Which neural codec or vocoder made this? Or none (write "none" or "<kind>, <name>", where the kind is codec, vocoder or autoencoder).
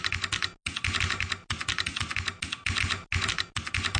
none